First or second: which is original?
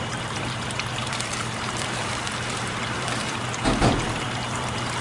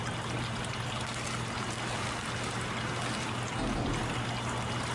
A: second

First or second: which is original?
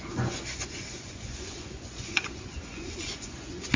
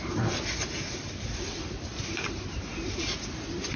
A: second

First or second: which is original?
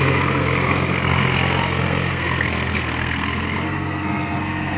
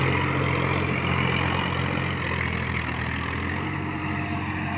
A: second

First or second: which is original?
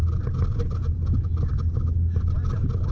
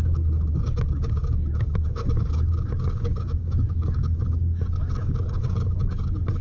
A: first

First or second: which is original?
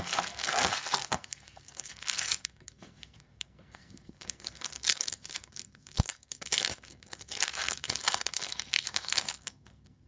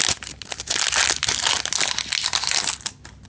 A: second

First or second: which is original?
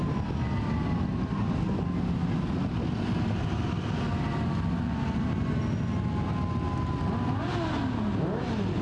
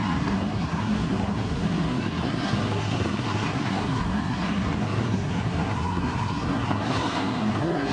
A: first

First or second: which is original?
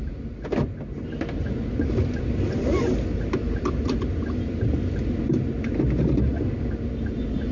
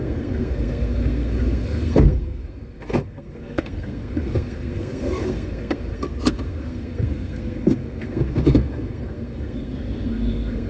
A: first